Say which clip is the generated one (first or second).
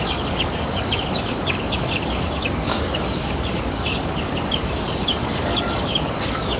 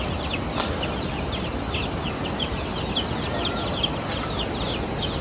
first